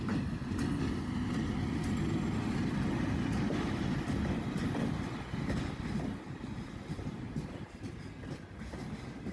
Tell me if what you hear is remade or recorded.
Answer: recorded